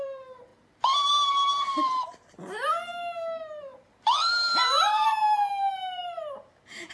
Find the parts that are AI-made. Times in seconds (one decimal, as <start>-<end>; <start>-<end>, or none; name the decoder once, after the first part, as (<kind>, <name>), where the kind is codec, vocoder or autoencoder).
0.0-5.1 (vocoder, BigVGAN v2); 5.7-6.9